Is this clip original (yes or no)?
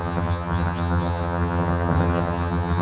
no